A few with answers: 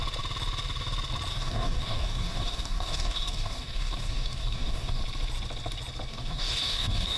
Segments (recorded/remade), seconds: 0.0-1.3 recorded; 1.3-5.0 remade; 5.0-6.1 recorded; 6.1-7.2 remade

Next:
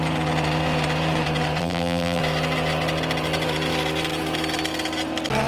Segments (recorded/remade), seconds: 0.0-1.6 recorded; 1.6-2.2 remade; 2.2-5.5 recorded

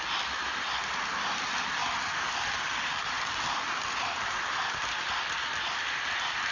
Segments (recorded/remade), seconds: 0.0-6.5 recorded

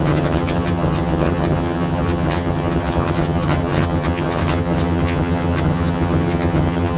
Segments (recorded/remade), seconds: 0.0-7.0 remade

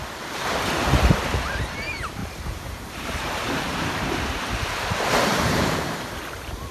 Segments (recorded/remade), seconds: 0.0-2.2 recorded; 2.2-6.1 remade; 6.1-6.7 recorded

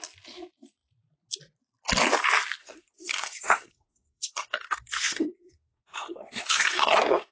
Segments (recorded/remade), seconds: 0.0-2.6 recorded; 2.6-7.3 remade